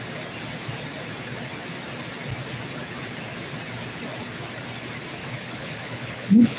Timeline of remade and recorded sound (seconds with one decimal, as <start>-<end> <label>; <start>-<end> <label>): 0.0-5.2 recorded; 5.2-6.6 remade